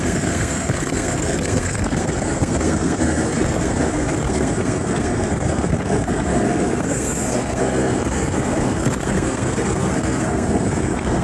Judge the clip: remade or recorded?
remade